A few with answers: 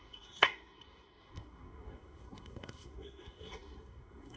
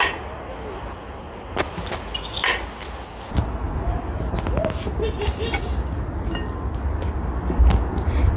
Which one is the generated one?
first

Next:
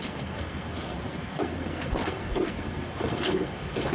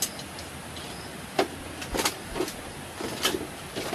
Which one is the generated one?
first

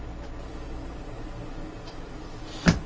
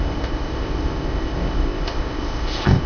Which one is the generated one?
second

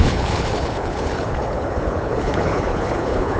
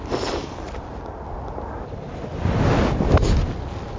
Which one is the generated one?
first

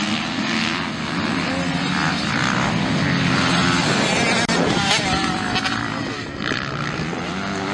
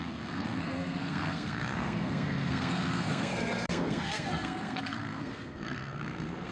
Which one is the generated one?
second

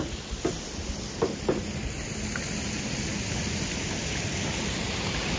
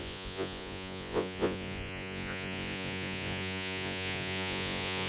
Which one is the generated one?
second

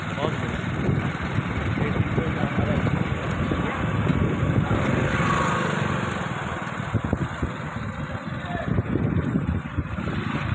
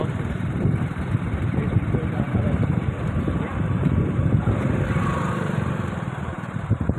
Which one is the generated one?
second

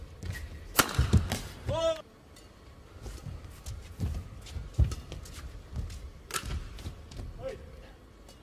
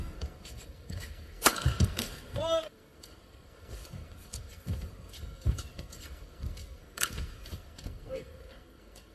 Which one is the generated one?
second